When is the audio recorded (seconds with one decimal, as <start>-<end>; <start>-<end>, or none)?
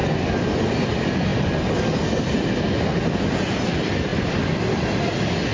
0.0-5.5